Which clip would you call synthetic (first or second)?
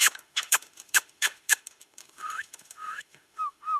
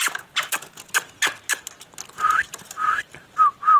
first